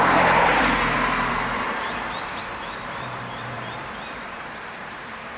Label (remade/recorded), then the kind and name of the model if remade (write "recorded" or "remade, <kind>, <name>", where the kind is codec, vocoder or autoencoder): remade, vocoder, BigVGAN v2